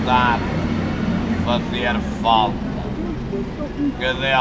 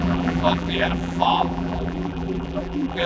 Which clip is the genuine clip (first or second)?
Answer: first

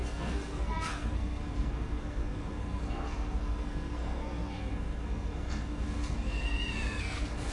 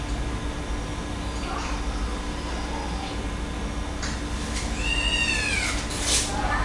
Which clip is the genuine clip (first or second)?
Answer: second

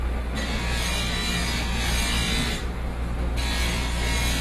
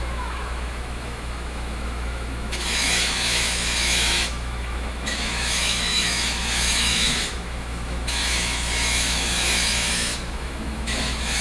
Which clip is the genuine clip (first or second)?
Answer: first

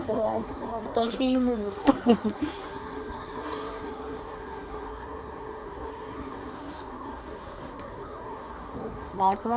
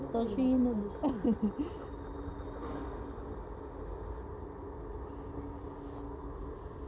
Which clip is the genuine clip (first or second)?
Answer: second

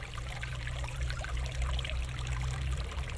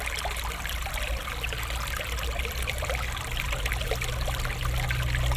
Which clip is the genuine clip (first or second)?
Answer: second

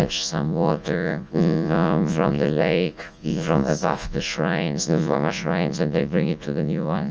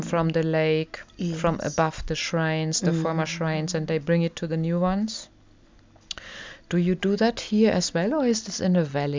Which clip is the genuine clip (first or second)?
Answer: second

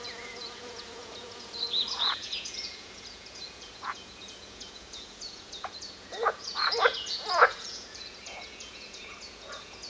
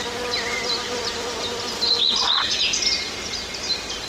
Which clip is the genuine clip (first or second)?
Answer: second